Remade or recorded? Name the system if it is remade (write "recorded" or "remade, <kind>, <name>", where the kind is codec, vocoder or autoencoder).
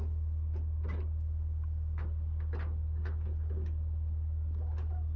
recorded